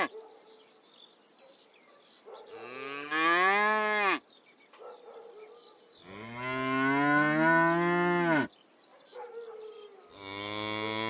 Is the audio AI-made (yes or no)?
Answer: no